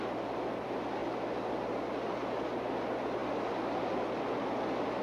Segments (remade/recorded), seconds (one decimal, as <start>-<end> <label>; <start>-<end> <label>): 0.0-5.0 recorded